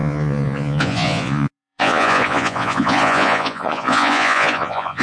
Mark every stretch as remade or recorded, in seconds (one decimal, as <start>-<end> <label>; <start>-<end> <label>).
0.0-5.0 remade